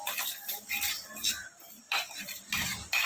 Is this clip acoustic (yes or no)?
yes